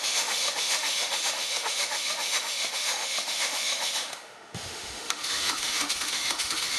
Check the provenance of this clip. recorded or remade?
remade